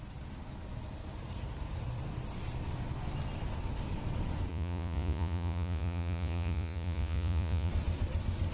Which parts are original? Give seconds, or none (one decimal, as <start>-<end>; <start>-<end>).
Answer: 0.0-4.5; 7.7-8.5